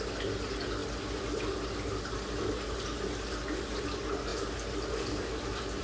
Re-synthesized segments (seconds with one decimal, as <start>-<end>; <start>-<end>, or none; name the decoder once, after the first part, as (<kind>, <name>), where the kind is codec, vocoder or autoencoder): none